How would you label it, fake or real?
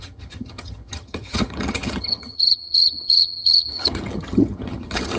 fake